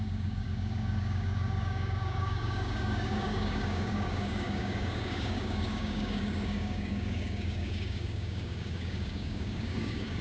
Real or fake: fake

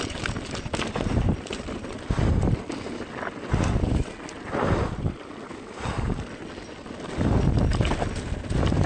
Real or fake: real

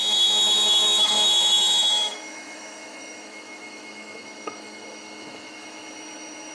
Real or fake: fake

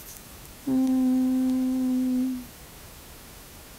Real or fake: fake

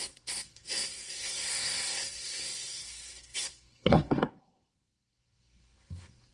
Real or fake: fake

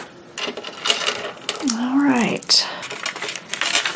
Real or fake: real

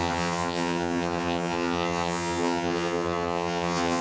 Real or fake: fake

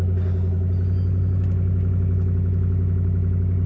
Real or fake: real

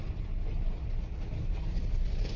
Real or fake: real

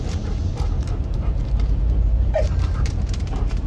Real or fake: fake